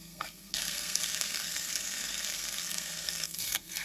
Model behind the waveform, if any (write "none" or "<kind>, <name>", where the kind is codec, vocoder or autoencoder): codec, SNAC